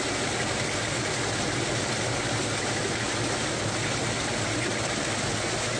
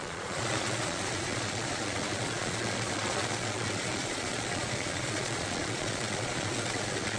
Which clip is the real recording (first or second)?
first